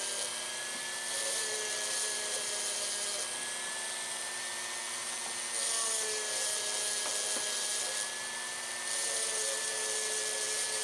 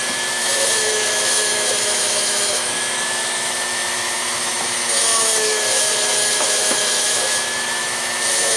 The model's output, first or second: second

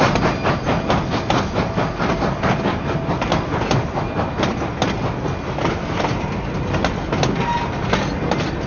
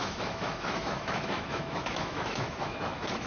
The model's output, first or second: second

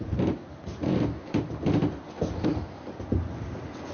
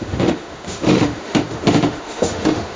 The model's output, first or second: second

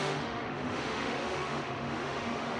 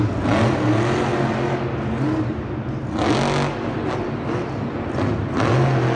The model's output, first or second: first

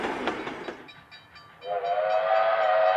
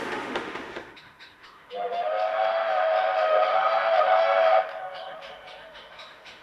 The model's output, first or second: second